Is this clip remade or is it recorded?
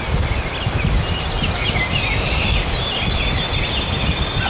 recorded